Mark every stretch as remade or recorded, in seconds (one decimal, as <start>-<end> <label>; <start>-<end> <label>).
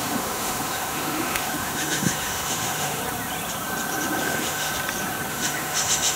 0.0-3.0 remade; 3.0-4.2 recorded; 4.2-4.7 remade; 4.7-5.3 recorded; 5.3-6.2 remade